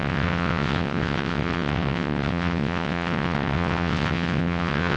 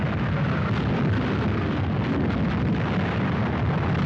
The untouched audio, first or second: second